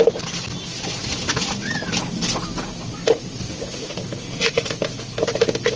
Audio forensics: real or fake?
real